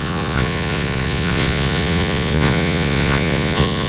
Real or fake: fake